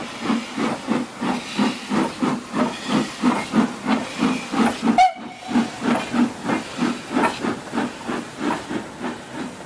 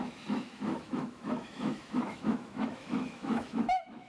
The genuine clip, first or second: first